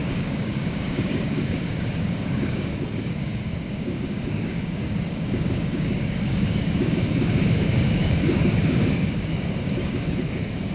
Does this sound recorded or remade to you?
remade